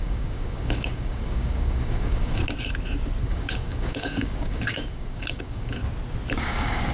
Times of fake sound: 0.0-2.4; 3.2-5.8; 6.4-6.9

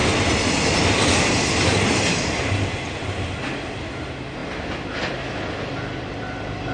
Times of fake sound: none

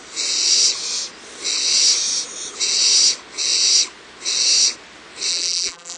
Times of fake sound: 5.3-6.0